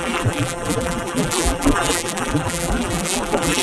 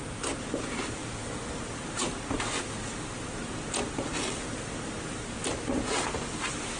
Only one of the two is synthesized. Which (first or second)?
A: first